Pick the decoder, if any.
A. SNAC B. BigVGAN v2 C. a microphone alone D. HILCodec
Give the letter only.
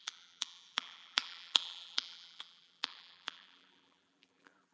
B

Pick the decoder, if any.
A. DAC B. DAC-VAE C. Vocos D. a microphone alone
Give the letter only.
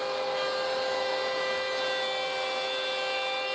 D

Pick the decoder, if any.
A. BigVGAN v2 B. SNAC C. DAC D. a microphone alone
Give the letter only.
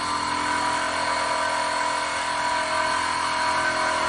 D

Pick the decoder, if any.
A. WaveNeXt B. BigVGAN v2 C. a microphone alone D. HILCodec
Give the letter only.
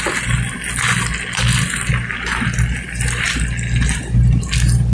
C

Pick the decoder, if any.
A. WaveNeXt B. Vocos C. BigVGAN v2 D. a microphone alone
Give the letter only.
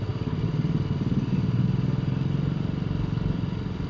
D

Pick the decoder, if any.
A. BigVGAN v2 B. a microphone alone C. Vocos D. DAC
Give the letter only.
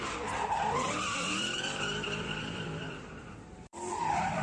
A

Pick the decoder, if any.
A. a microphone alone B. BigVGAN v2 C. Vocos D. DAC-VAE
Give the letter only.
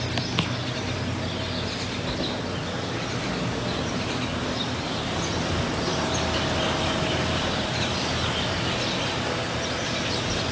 A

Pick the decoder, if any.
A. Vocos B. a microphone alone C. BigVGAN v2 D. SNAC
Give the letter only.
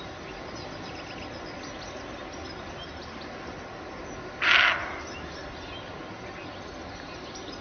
B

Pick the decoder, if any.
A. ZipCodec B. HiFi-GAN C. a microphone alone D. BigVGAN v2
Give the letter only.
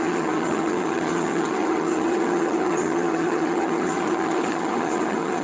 B